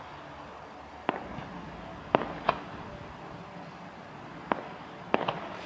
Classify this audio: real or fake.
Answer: real